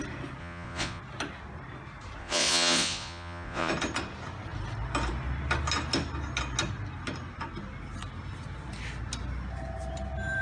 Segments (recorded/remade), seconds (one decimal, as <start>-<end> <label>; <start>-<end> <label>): 0.0-0.4 recorded; 0.4-1.0 remade; 1.0-2.2 recorded; 2.2-3.7 remade; 3.7-10.4 recorded